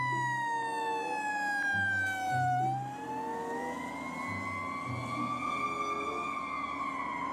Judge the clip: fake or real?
real